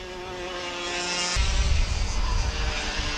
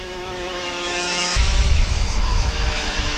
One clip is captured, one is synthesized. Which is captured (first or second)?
first